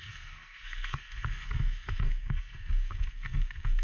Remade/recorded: remade